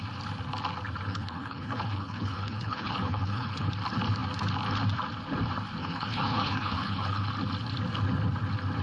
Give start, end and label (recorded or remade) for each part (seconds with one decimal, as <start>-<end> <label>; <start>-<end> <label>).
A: 0.0-1.1 recorded; 1.1-3.7 remade; 3.7-5.8 recorded; 5.8-7.3 remade; 7.3-8.8 recorded